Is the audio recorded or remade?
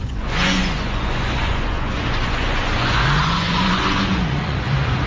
remade